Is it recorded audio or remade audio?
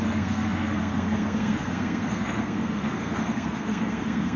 remade